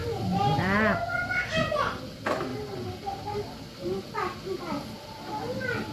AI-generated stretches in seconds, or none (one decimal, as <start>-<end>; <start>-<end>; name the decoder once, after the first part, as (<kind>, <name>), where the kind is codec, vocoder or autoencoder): 2.5-3.4 (vocoder, BigVGAN v2)